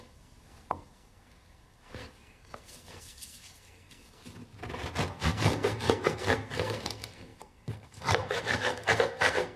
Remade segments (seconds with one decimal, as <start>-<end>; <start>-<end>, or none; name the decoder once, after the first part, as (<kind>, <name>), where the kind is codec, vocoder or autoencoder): 0.0-4.2 (codec, SNAC); 5.1-9.6